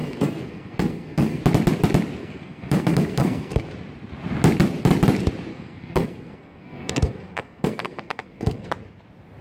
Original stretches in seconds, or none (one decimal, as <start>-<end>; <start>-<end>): 1.4-2.2; 3.7-5.5; 8.7-9.4